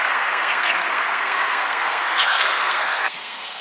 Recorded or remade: remade